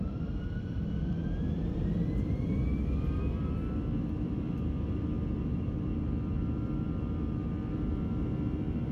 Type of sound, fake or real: fake